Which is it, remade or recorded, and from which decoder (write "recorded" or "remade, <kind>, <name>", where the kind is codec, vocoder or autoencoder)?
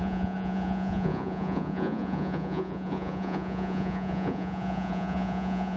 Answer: remade, vocoder, Vocos